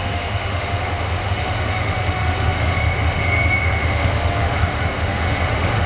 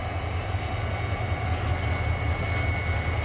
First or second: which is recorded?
second